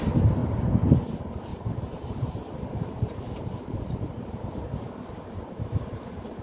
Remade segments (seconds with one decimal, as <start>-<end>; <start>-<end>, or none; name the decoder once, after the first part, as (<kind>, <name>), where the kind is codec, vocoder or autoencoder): 0.0-0.4 (vocoder, BigVGAN v2); 1.1-6.4